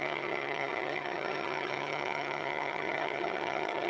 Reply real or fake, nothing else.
fake